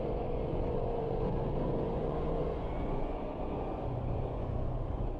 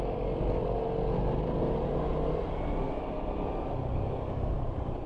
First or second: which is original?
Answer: second